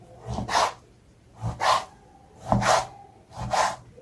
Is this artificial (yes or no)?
no